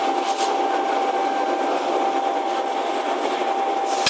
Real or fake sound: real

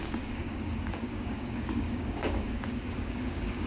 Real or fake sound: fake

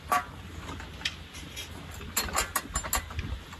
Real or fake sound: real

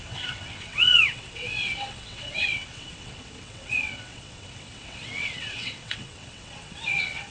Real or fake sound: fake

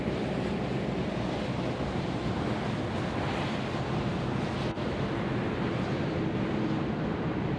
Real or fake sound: real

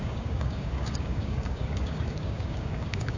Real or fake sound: fake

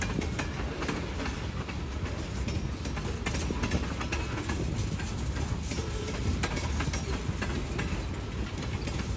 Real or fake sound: real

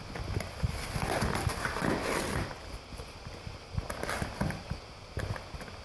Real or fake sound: real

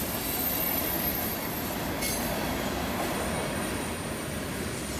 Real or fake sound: real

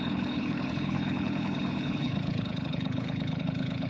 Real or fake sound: fake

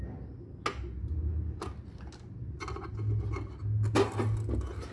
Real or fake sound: real